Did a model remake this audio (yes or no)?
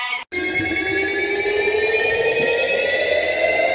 no